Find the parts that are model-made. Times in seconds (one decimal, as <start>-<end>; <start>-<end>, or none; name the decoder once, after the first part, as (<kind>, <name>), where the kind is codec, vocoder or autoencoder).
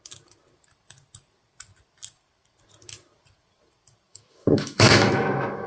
4.1-5.7 (autoencoder, DAC-VAE)